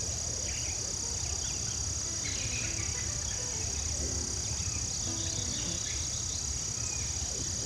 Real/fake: real